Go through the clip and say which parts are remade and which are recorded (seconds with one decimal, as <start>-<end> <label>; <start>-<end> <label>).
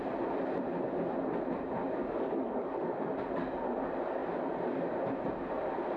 0.0-2.0 recorded; 2.0-3.1 remade; 3.1-6.0 recorded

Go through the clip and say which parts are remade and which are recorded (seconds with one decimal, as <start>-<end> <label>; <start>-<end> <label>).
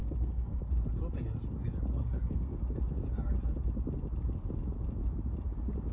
0.0-0.6 remade; 0.6-2.0 recorded; 2.0-2.6 remade; 2.6-5.9 recorded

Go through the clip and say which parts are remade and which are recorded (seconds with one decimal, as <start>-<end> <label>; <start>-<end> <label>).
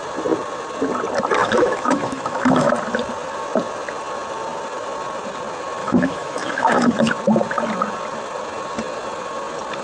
0.0-1.4 recorded; 1.4-2.7 remade; 2.7-5.8 recorded; 5.8-7.1 remade; 7.1-9.8 recorded